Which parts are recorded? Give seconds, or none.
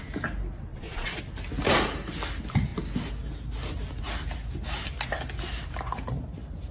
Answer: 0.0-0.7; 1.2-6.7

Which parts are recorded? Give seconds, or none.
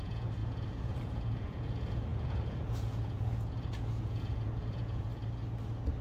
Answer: 5.1-6.0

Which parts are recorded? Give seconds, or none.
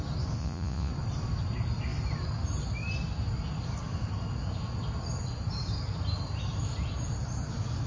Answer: 0.0-0.4; 0.9-7.9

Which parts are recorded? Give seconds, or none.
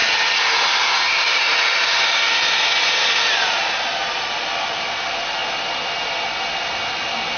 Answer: 0.0-7.4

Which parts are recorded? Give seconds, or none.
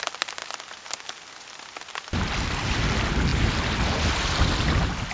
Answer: 0.0-5.1